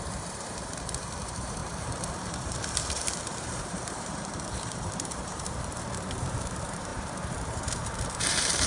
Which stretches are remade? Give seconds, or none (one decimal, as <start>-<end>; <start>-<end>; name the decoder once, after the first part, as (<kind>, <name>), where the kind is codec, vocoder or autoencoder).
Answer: 0.0-8.7 (vocoder, BigVGAN v2)